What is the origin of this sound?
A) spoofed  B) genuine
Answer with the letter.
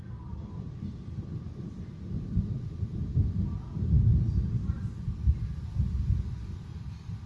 B